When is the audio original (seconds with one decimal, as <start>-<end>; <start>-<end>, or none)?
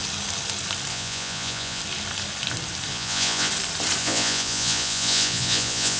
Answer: 0.0-0.9; 1.8-2.9; 3.5-4.0